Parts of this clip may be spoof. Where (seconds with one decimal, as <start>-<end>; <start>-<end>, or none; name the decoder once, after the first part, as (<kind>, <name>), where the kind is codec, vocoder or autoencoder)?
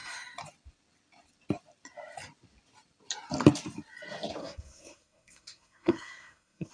4.4-6.7 (codec, SNAC)